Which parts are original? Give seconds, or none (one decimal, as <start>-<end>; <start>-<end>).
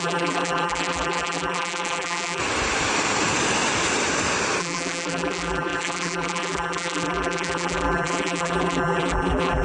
2.4-4.6